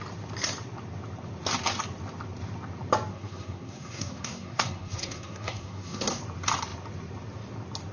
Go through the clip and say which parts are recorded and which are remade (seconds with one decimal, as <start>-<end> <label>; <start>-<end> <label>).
0.0-3.1 recorded; 3.1-6.2 remade; 6.2-7.9 recorded